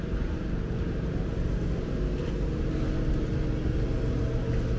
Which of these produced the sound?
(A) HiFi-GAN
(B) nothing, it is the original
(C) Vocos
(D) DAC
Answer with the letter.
B